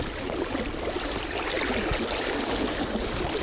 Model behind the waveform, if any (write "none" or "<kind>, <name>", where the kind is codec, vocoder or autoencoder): none